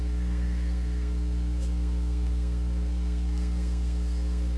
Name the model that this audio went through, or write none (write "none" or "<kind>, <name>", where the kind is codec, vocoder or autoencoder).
codec, SNAC